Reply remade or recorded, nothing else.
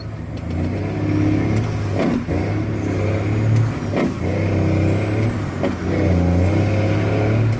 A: recorded